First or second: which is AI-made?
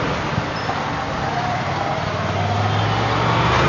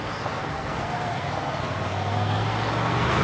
second